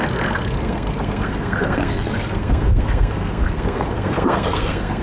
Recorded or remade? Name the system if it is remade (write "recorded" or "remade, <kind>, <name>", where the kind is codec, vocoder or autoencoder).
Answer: remade, codec, SNAC